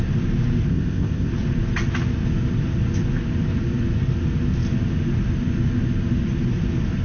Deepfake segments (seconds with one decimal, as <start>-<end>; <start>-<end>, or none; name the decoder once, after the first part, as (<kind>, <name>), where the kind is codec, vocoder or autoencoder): 0.7-1.3 (codec, ZipCodec)